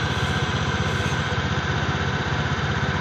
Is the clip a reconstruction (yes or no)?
no